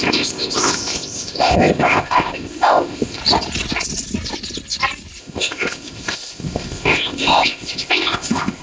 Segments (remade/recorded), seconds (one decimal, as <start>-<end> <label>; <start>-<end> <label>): 0.0-3.2 remade; 3.2-5.2 recorded; 5.2-8.6 remade